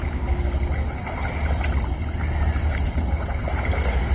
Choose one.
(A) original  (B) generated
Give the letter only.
A